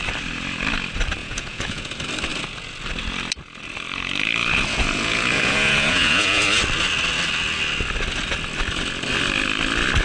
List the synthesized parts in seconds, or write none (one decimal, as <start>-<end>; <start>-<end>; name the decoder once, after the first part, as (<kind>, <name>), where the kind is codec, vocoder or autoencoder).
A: 1.2-1.9 (vocoder, Vocos); 4.4-6.4